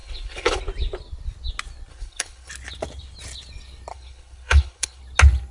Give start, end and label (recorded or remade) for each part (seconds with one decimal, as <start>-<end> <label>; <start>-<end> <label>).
0.0-0.6 remade; 0.6-1.9 recorded; 1.9-2.5 remade; 2.5-3.9 recorded; 3.9-5.0 remade; 5.0-5.5 recorded